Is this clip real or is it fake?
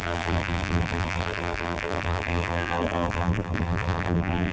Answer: fake